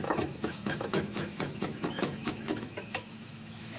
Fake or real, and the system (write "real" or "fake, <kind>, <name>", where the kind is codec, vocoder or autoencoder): fake, autoencoder, DAC-VAE